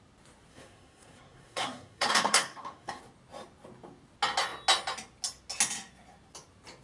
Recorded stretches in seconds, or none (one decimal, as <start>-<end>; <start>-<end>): 0.0-0.5; 3.0-6.8